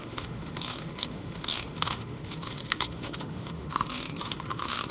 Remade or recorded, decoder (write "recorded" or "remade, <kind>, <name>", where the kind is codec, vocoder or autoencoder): remade, autoencoder, DAC-VAE